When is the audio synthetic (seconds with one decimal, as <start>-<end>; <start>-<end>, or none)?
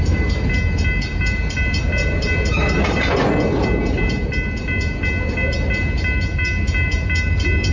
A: none